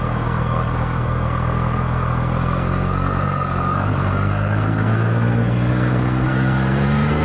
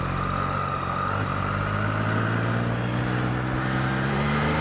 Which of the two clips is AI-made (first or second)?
first